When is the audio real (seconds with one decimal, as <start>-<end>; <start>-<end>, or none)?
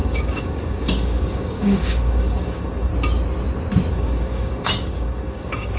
2.9-3.9